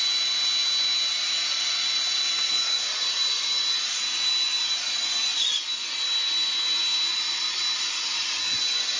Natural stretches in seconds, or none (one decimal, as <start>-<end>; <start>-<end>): 0.0-9.0